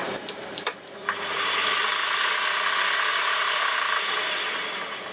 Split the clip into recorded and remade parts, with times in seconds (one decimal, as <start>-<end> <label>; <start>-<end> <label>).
0.0-1.8 remade; 1.8-3.1 recorded; 3.1-4.4 remade; 4.4-5.1 recorded

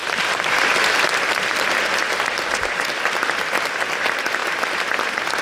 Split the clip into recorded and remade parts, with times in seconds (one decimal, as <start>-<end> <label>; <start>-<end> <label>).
0.0-3.2 remade; 3.2-5.4 recorded

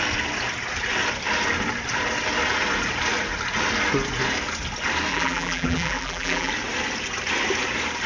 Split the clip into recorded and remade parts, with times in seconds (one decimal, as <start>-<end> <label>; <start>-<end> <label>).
0.0-5.1 recorded; 5.1-6.5 remade; 6.5-8.1 recorded

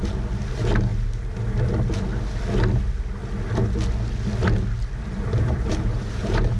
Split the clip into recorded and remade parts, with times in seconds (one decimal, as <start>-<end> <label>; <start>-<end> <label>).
0.0-5.3 recorded; 5.3-6.6 remade

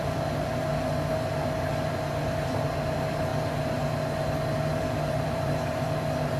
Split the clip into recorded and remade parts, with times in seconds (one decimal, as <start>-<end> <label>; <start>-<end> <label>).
0.0-0.7 remade; 0.7-1.3 recorded; 1.3-3.3 remade; 3.3-4.7 recorded; 4.7-6.4 remade

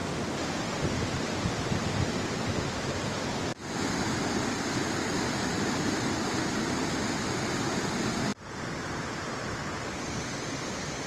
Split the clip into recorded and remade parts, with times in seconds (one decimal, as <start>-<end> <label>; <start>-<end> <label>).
0.0-1.0 recorded; 1.0-3.5 remade; 3.5-4.0 recorded; 4.0-8.3 remade; 8.3-8.8 recorded; 8.8-9.6 remade; 9.6-10.2 recorded; 10.2-11.1 remade